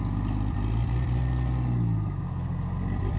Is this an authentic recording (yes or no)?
yes